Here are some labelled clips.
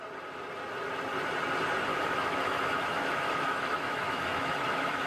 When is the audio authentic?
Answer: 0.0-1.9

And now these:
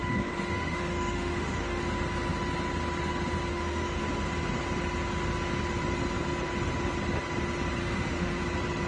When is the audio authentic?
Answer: 1.8-3.5; 4.0-7.8; 8.4-8.9